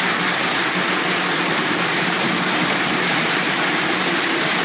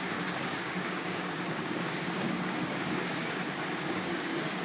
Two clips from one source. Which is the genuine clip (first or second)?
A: first